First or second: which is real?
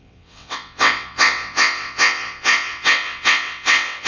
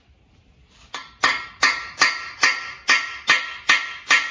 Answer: second